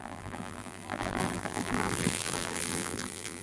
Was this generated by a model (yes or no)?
yes